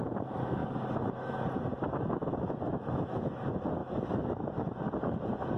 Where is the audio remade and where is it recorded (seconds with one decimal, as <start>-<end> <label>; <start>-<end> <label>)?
0.0-0.6 recorded; 0.6-1.3 remade; 1.3-2.2 recorded; 2.2-3.4 remade; 3.4-3.8 recorded; 3.8-4.8 remade; 4.8-5.6 recorded